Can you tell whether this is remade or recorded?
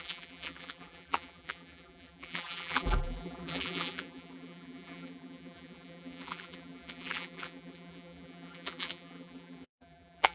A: remade